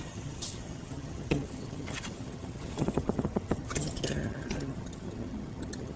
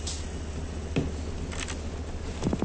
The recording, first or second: second